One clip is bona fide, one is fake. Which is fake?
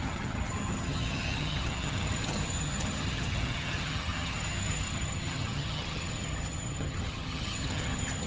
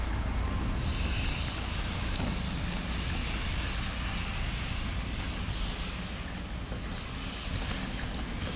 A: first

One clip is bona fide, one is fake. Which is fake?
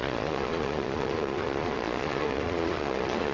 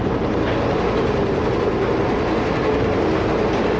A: first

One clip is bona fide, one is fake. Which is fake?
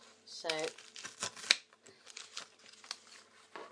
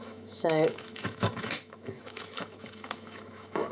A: second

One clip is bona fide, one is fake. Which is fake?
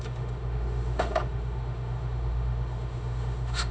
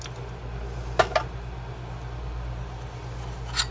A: first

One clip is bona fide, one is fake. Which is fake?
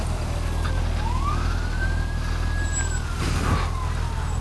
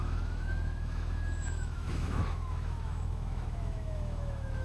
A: second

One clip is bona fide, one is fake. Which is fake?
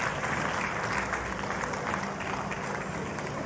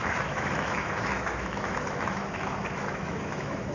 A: second